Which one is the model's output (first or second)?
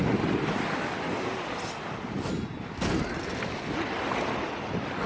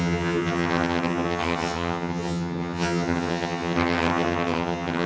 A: second